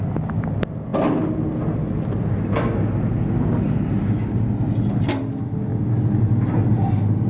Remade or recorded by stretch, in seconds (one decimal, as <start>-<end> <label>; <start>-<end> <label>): 0.0-7.3 recorded